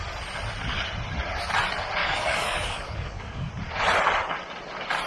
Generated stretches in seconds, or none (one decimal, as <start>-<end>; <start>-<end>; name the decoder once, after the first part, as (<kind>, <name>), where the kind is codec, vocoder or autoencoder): 2.0-3.5 (codec, DAC)